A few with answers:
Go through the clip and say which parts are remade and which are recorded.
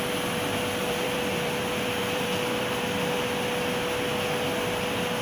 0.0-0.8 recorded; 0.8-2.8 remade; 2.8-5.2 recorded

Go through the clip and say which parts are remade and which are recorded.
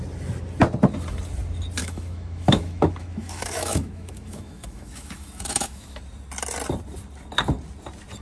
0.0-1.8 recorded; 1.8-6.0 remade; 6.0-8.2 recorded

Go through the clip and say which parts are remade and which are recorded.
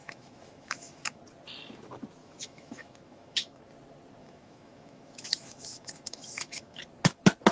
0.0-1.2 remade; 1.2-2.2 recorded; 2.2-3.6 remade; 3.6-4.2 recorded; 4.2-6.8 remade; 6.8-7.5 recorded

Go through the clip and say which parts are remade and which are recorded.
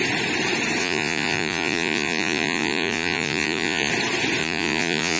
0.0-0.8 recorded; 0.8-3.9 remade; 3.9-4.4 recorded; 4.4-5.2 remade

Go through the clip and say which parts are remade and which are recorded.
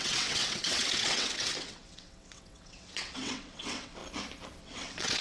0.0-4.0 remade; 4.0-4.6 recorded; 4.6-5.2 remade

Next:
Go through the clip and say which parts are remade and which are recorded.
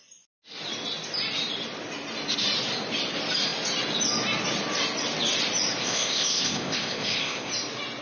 0.0-5.8 recorded; 5.8-7.5 remade; 7.5-8.0 recorded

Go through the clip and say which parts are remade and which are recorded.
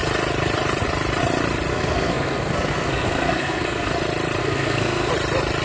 0.0-1.7 recorded; 1.7-3.9 remade; 3.9-4.4 recorded; 4.4-5.1 remade; 5.1-5.6 recorded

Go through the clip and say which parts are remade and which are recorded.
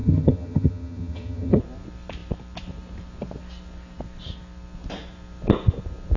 0.0-1.6 remade; 1.6-6.2 recorded